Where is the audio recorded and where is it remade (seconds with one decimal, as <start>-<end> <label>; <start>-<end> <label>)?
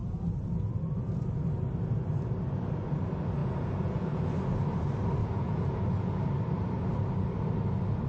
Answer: 0.0-3.4 recorded; 3.4-4.4 remade; 4.4-5.2 recorded; 5.2-6.2 remade; 6.2-8.1 recorded